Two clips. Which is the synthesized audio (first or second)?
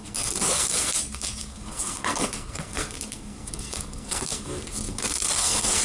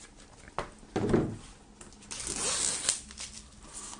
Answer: first